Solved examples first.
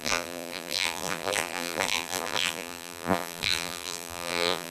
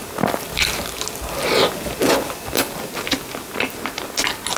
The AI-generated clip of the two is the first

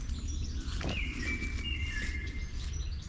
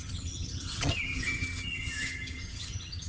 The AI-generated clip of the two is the second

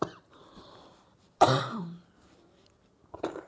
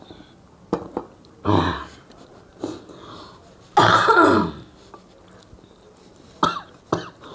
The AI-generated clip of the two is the first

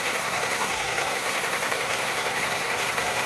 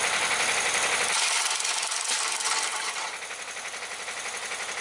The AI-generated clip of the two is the first